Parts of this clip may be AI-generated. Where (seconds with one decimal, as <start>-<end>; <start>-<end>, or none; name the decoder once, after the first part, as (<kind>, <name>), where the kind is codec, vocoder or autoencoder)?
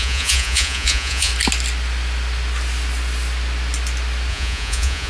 0.0-1.3 (vocoder, Vocos); 4.3-5.1